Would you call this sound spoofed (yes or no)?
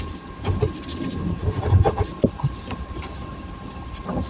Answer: yes